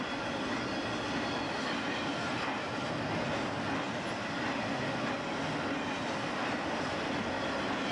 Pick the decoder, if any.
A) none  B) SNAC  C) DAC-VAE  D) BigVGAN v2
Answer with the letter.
A